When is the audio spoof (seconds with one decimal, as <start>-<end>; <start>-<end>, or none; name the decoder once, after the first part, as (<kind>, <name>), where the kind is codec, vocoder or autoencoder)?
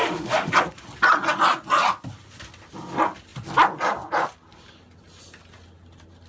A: 0.0-0.5 (autoencoder, DAC-VAE)